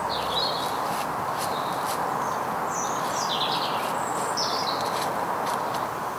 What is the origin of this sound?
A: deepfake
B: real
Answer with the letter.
B